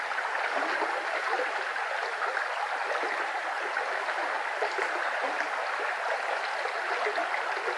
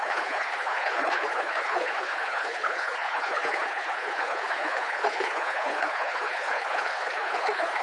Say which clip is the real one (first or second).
first